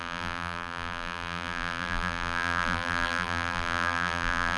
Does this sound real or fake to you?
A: fake